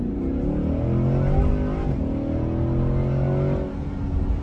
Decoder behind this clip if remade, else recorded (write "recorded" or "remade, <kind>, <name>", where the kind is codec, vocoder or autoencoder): recorded